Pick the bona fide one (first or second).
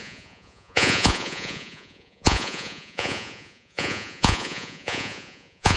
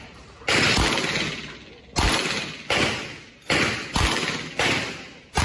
second